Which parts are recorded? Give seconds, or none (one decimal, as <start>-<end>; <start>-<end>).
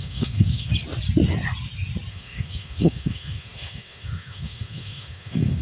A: 0.7-2.1